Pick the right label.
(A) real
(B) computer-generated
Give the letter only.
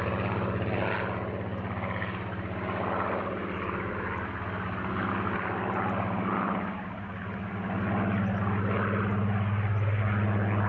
A